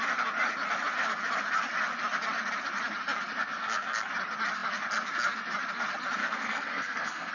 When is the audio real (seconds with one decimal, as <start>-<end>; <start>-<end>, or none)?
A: 0.0-3.4; 4.1-6.2